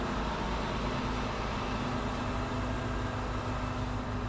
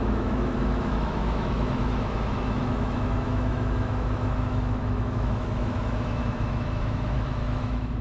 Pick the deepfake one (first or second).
second